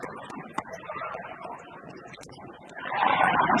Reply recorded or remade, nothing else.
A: remade